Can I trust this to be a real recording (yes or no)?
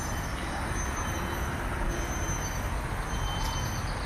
yes